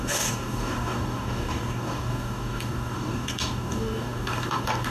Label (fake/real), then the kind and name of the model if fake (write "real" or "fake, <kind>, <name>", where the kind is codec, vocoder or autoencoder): fake, codec, DAC